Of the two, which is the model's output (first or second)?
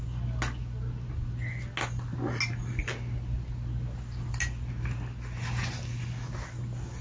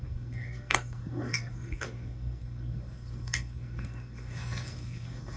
second